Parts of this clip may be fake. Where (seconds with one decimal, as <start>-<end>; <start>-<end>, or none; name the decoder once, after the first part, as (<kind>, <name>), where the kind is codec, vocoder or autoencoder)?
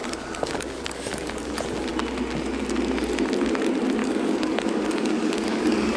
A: 0.0-1.5 (codec, DAC); 4.0-6.0